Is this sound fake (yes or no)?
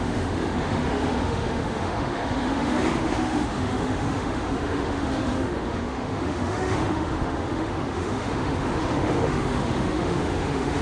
yes